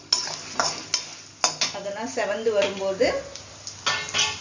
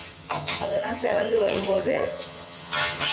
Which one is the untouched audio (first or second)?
first